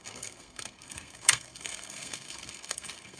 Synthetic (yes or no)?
yes